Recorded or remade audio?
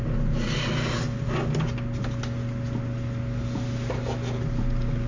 recorded